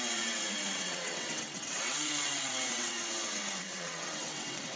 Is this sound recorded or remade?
remade